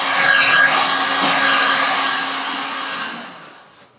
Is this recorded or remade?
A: recorded